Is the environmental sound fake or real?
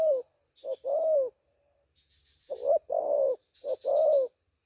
real